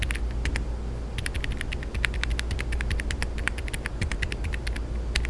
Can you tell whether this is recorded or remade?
recorded